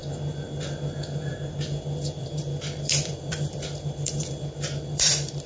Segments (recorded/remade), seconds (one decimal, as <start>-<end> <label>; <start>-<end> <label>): 0.0-2.2 recorded; 2.2-5.5 remade